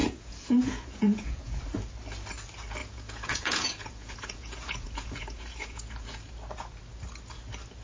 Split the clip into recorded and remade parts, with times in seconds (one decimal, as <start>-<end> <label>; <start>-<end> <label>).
0.0-1.6 remade; 1.6-2.8 recorded; 2.8-6.3 remade; 6.3-7.8 recorded